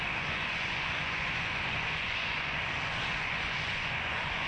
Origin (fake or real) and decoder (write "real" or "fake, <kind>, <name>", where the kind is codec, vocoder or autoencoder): fake, vocoder, Vocos